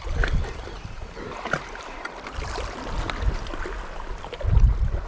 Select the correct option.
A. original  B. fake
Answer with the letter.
A